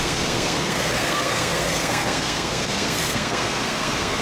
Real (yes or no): no